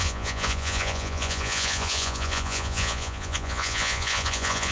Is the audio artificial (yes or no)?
yes